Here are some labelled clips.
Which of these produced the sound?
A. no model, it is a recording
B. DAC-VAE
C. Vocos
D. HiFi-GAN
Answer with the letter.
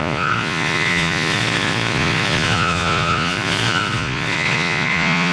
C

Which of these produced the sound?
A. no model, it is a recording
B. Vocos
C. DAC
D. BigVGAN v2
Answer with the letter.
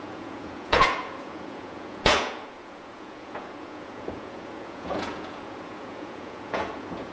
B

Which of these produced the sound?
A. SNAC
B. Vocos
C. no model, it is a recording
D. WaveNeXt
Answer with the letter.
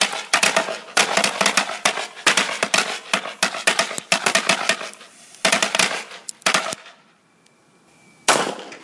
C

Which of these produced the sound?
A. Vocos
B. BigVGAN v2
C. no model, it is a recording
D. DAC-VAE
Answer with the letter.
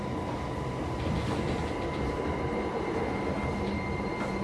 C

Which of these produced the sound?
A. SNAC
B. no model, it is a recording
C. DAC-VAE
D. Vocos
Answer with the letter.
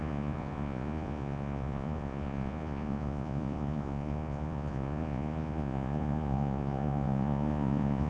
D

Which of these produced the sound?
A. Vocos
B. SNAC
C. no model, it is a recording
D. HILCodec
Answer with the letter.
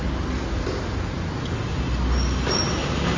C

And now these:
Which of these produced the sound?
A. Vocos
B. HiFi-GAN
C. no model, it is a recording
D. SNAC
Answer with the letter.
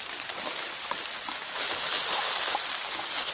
C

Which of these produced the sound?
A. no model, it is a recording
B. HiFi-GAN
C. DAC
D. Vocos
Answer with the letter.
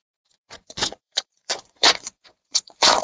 D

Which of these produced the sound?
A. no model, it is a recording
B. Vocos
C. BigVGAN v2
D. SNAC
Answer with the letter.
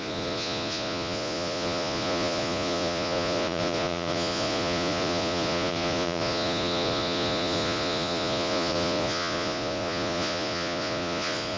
B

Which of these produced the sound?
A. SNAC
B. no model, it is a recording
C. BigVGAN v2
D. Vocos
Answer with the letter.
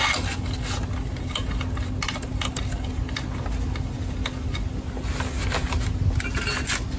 B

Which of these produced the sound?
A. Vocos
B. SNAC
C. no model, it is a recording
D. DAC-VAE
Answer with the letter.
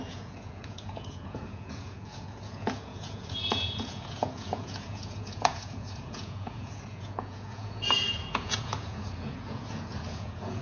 A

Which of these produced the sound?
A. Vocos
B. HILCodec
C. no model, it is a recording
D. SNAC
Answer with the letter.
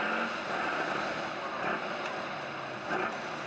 C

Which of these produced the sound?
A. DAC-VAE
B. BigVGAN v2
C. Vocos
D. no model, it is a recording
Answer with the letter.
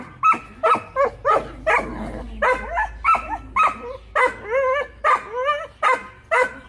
D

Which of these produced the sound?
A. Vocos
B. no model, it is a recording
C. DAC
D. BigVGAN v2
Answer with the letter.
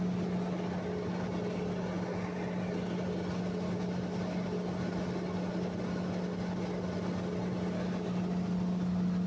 B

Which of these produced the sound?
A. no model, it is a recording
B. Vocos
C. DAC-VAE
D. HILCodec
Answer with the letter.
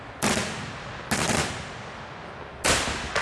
A